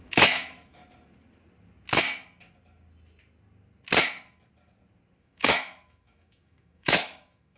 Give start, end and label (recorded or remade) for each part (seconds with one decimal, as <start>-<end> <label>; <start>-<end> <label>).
0.0-0.8 remade; 0.8-5.2 recorded; 5.2-7.6 remade